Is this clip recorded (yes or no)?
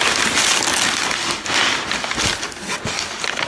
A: yes